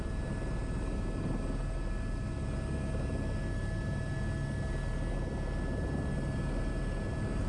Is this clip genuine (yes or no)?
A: yes